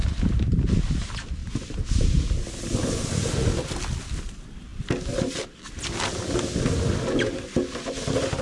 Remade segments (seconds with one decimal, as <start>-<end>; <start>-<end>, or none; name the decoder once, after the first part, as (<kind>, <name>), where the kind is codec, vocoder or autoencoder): none